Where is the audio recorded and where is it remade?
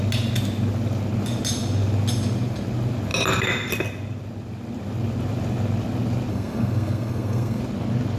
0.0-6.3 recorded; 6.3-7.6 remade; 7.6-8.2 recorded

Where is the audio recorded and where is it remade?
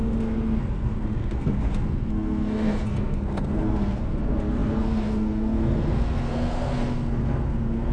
0.0-7.9 remade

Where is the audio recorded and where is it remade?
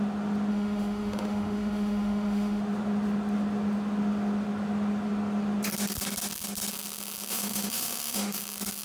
0.0-0.5 recorded; 0.5-2.6 remade; 2.6-7.3 recorded; 7.3-8.4 remade; 8.4-8.8 recorded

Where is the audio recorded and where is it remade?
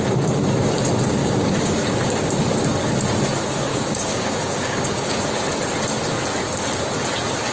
0.0-1.2 recorded; 1.2-1.8 remade; 1.8-3.7 recorded; 3.7-5.2 remade; 5.2-7.5 recorded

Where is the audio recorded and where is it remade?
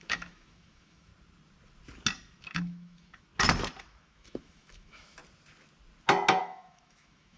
0.0-1.1 remade; 1.1-2.4 recorded; 2.4-3.3 remade; 3.3-3.8 recorded; 3.8-5.2 remade; 5.2-6.4 recorded; 6.4-7.4 remade